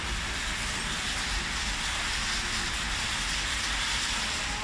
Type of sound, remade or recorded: recorded